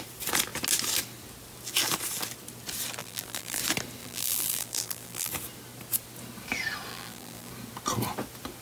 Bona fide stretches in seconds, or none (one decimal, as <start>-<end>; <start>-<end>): 0.0-3.0; 3.6-4.0; 5.3-6.9; 7.5-8.6